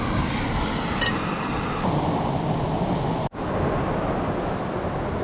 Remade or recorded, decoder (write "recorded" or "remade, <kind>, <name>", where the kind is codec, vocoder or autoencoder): recorded